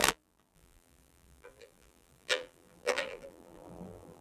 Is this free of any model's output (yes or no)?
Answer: no